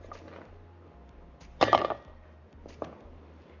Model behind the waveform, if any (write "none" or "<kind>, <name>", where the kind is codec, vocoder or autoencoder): none